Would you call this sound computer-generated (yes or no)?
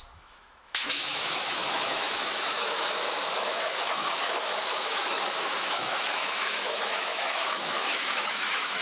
yes